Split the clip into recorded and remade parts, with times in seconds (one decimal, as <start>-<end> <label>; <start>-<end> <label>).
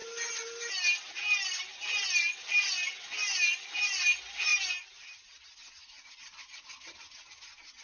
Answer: 0.0-7.8 recorded